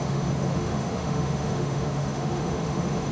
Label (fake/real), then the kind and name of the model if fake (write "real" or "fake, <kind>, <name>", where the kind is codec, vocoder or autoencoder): fake, autoencoder, DAC-VAE